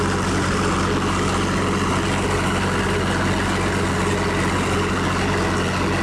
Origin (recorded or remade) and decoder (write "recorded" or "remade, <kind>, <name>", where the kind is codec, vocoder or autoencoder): recorded